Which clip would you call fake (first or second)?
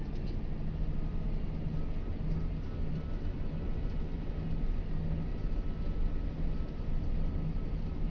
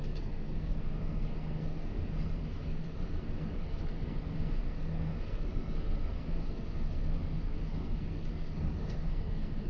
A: second